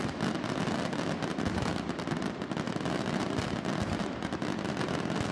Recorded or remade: recorded